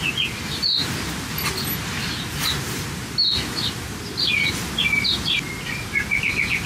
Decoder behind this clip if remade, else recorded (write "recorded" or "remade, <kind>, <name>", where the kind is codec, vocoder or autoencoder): recorded